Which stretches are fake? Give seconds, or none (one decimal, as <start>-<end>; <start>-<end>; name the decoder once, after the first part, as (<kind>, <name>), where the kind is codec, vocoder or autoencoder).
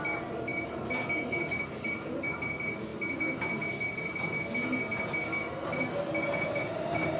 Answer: none